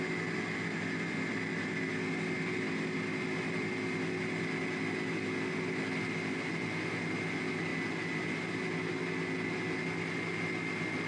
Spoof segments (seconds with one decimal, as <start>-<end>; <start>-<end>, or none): none